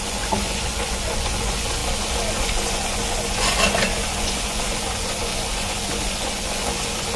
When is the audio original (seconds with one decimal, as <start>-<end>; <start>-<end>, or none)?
none